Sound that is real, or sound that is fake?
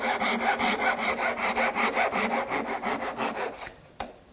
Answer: real